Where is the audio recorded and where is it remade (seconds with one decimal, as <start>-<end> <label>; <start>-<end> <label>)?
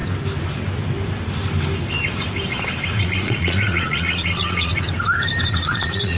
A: 0.0-3.0 recorded; 3.0-4.7 remade; 4.7-5.5 recorded; 5.5-6.2 remade